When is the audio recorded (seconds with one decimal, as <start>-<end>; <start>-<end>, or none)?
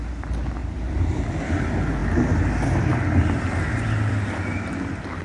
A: 0.0-0.6; 1.2-5.2